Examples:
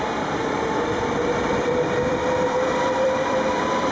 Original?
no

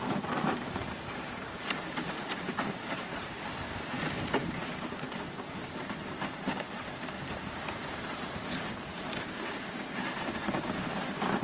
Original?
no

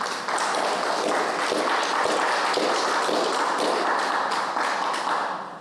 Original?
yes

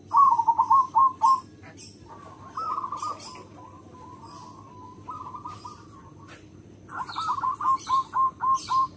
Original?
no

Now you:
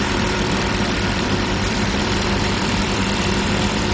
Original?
no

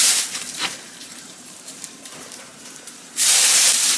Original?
no